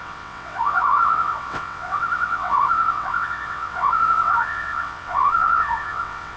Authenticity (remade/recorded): remade